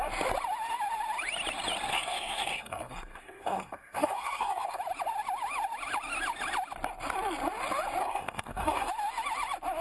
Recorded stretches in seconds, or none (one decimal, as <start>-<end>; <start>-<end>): 0.0-1.9; 4.8-8.0; 8.9-9.8